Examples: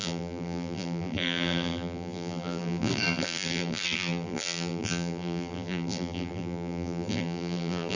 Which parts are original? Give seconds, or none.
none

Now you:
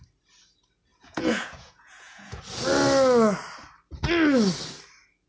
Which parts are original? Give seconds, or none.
0.0-0.9; 2.4-5.3

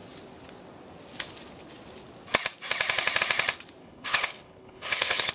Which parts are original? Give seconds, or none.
0.0-3.8

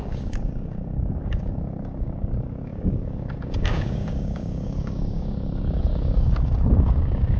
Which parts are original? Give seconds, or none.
none

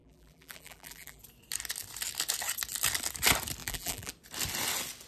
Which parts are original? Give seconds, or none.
1.2-3.6; 4.1-5.1

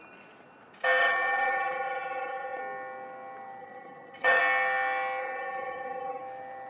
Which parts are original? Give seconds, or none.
0.0-1.0; 2.6-3.6; 4.4-5.2; 6.2-6.7